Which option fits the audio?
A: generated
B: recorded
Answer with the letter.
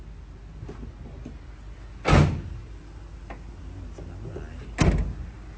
B